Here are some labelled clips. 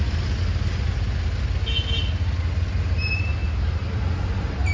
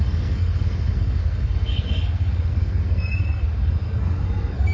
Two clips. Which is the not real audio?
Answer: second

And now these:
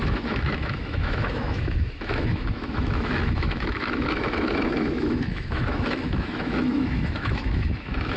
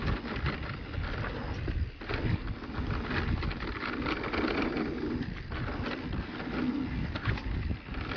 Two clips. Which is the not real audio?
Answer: first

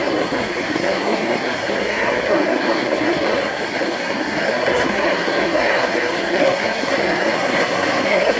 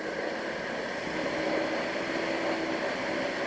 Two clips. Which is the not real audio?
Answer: first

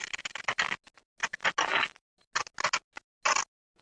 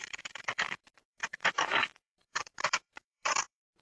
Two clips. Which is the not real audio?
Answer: second